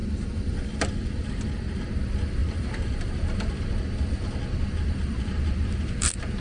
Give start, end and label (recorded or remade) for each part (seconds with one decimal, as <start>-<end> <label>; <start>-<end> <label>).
0.0-1.5 remade; 1.5-2.4 recorded; 2.4-6.4 remade